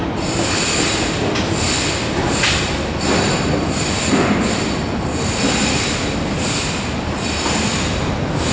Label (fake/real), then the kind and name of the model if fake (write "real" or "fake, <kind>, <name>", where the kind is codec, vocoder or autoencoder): real